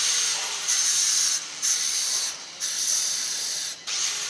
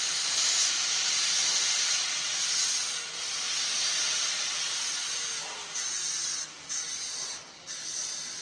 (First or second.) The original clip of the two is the second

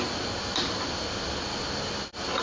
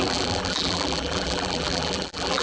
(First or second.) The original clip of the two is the first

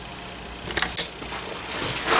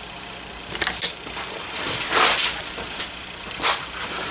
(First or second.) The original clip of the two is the first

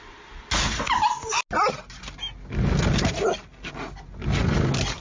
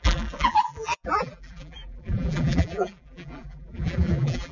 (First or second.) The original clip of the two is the first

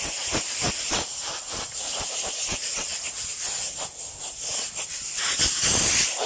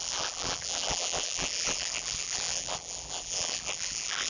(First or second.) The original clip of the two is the first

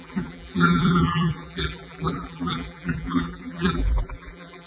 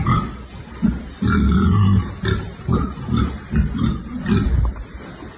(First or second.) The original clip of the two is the second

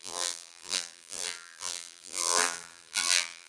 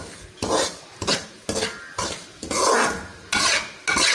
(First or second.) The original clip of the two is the second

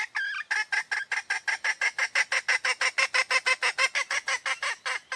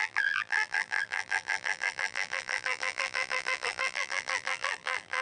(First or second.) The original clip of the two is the first